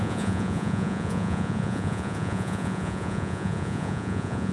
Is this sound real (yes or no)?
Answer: no